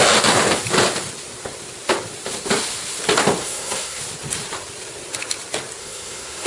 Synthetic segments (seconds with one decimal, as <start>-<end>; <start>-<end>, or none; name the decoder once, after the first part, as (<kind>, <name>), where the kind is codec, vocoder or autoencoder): 3.4-4.0 (codec, SNAC); 5.8-6.5